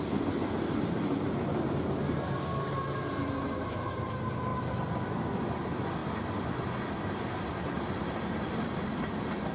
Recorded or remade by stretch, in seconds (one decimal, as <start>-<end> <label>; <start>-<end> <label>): 0.0-9.5 recorded